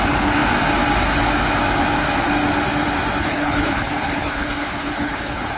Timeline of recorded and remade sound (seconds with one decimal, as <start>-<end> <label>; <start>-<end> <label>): 0.0-3.2 recorded; 3.2-5.6 remade